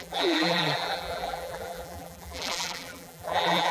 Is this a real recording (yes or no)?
no